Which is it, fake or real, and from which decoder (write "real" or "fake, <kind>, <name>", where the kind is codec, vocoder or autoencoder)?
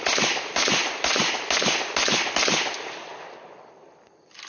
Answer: real